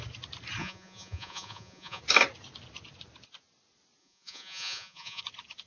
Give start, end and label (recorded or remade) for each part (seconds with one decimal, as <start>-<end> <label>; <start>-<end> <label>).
0.0-0.6 recorded; 0.6-2.0 remade; 2.0-4.0 recorded; 4.0-5.2 remade; 5.2-5.7 recorded